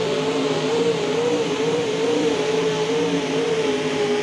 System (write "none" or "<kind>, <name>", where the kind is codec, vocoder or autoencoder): vocoder, BigVGAN v2